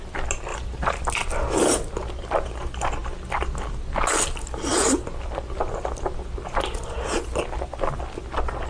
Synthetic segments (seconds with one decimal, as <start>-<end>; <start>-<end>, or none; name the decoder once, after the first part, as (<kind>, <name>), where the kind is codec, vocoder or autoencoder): none